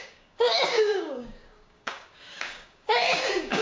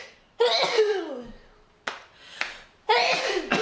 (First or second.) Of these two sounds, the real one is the second